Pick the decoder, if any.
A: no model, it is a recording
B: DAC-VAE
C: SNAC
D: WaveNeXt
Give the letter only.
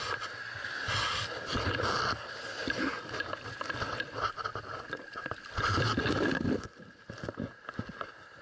A